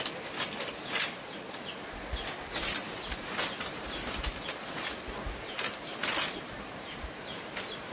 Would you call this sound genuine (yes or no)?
yes